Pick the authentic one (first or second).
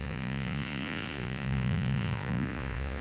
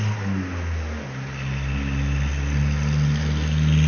second